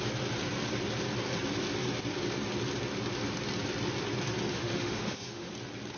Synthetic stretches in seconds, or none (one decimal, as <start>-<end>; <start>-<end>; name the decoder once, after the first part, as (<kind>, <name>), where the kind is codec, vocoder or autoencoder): 4.5-5.5 (autoencoder, DAC-VAE)